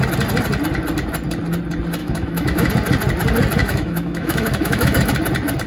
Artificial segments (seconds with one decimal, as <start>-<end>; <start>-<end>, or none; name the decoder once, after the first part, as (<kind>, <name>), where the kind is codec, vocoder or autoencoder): 2.0-2.7 (autoencoder, DAC-VAE); 3.6-5.1